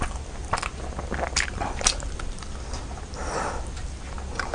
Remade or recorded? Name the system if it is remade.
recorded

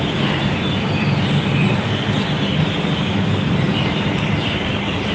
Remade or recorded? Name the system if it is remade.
recorded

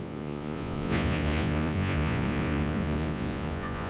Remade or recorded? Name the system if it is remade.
remade, vocoder, Vocos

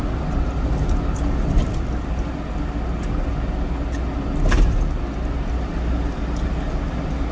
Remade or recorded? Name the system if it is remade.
recorded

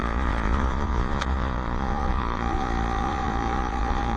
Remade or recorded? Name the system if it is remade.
remade, vocoder, Vocos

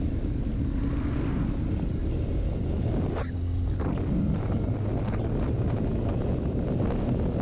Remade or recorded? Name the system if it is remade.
recorded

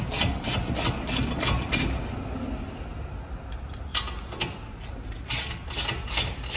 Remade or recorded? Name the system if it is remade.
recorded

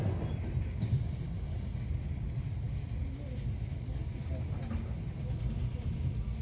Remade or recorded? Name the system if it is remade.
recorded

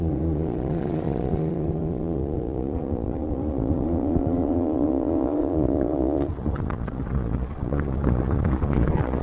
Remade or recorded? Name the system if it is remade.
remade, vocoder, Vocos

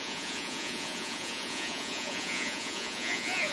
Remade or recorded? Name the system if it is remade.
remade, vocoder, Vocos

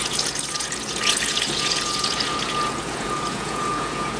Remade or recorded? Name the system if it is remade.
remade, vocoder, Vocos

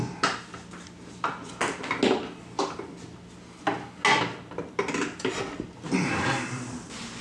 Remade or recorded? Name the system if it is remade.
recorded